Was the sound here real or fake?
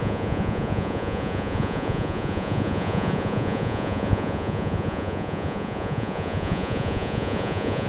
fake